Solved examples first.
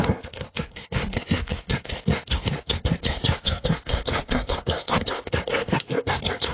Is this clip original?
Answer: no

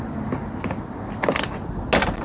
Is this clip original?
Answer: yes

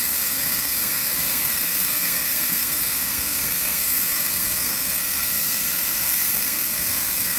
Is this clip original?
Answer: no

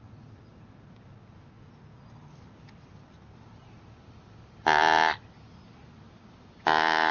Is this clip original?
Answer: yes